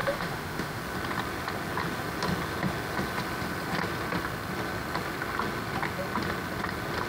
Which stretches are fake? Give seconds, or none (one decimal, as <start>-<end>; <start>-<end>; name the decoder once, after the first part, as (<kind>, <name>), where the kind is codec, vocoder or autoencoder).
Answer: 0.0-0.8 (autoencoder, DAC-VAE)

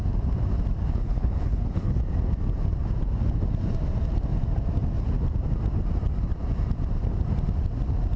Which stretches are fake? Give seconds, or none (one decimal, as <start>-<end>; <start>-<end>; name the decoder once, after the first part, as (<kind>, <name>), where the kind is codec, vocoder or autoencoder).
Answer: 0.8-2.0 (codec, HILCodec)

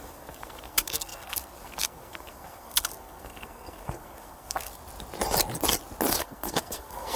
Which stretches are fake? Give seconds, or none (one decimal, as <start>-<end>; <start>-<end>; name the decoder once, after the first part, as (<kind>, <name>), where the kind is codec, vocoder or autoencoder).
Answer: 0.0-4.8 (codec, SNAC); 6.1-7.2

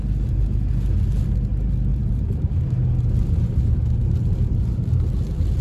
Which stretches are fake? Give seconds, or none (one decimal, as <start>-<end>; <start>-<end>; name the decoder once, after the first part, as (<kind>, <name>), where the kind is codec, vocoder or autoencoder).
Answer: 1.9-2.5 (vocoder, BigVGAN v2)

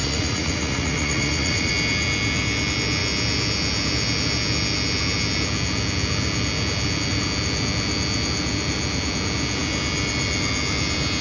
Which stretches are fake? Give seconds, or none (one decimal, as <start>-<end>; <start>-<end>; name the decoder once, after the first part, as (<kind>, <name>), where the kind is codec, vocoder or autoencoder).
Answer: 0.0-1.7 (vocoder, Vocos)

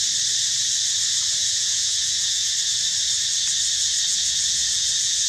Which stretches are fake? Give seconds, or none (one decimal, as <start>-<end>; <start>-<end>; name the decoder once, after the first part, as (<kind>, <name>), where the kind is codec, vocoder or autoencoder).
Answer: 1.4-2.5 (vocoder, Vocos); 4.1-5.3

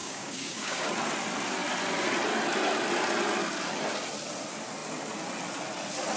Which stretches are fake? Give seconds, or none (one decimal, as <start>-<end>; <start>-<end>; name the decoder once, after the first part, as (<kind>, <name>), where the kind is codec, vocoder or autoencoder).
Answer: 0.0-0.9 (codec, DAC)